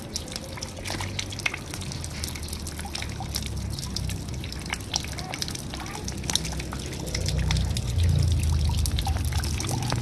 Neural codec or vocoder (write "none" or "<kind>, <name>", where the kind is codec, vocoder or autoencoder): none